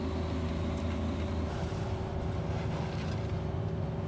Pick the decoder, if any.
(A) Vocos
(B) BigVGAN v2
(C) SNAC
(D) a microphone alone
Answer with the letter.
D